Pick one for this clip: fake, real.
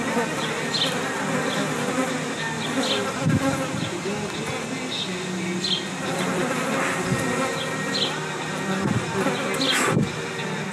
real